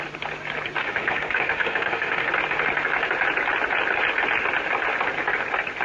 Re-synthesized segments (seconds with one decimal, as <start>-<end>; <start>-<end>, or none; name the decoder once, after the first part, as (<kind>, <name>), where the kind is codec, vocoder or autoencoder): 0.8-2.3 (autoencoder, DAC-VAE)

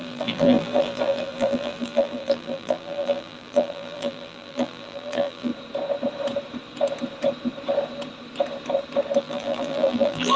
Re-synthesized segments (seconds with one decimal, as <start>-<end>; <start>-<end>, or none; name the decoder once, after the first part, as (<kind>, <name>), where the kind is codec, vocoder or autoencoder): 0.0-5.5 (vocoder, BigVGAN v2); 9.2-10.4

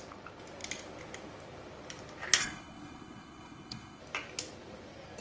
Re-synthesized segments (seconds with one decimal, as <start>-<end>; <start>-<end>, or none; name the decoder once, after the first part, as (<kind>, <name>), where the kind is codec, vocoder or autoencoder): 2.4-4.0 (codec, HILCodec)

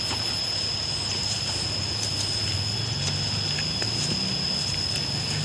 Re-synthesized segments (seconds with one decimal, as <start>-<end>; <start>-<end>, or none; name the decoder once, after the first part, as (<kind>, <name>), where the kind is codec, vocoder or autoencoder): none

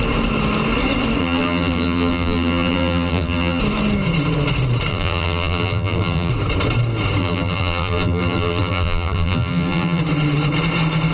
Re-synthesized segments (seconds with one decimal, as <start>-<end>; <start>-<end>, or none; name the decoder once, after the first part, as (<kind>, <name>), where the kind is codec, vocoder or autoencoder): 1.2-3.6 (vocoder, BigVGAN v2); 4.9-6.3; 7.2-10.0